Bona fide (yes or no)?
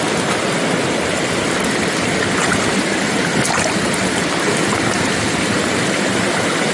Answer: yes